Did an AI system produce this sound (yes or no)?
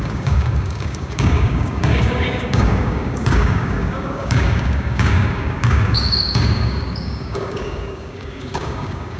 yes